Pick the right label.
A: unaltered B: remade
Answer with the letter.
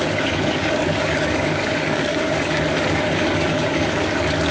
B